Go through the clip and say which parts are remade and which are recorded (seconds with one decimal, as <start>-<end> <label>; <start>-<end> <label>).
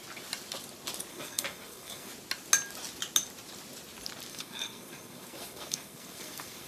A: 0.0-1.1 recorded; 1.1-2.1 remade; 2.1-4.3 recorded; 4.3-6.7 remade